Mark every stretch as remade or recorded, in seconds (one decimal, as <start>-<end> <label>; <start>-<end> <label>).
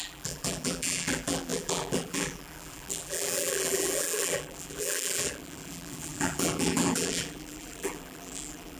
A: 0.0-8.8 remade